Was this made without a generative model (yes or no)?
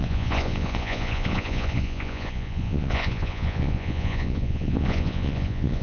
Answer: no